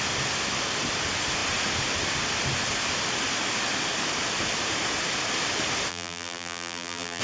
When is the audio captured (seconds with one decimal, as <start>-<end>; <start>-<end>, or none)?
0.0-5.9